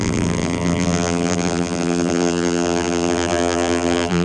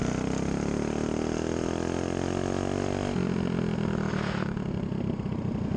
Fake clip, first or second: first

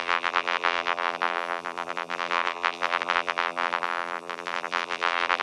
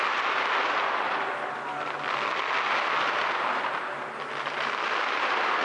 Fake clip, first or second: first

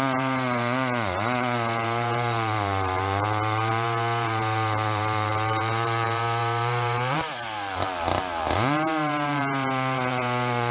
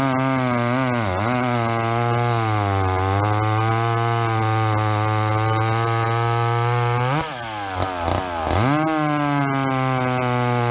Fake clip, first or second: first